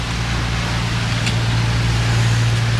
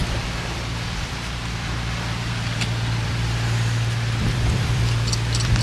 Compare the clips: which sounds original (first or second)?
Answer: first